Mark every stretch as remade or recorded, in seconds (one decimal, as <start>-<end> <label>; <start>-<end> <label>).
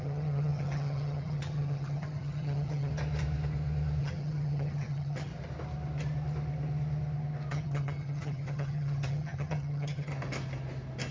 0.0-2.9 remade; 2.9-4.0 recorded; 4.0-5.3 remade; 5.3-7.5 recorded; 7.5-10.1 remade; 10.1-11.1 recorded